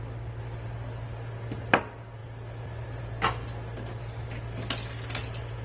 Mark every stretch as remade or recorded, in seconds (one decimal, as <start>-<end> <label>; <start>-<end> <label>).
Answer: 0.0-5.6 recorded